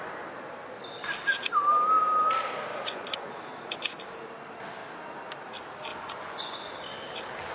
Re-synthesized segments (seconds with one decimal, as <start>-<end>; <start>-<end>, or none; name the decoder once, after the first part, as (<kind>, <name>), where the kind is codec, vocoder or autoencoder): 2.7-3.3 (vocoder, Vocos); 5.9-6.7